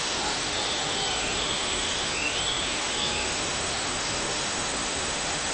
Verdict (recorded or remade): remade